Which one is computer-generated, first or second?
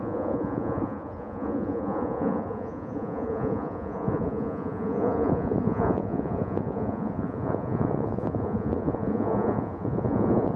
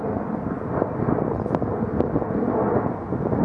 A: first